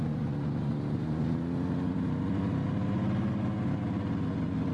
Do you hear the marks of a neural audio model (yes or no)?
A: no